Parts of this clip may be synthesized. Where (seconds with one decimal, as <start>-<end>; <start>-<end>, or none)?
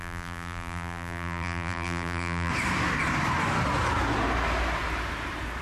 0.0-2.5